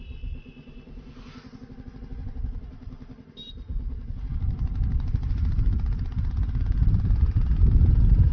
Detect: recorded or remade recorded